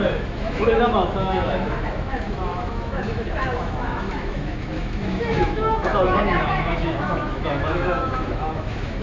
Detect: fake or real fake